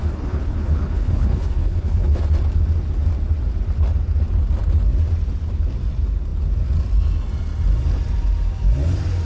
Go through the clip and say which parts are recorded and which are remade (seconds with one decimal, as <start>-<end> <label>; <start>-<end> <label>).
0.0-2.2 remade; 2.2-9.2 recorded